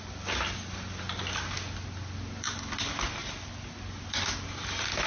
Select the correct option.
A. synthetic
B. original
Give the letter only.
B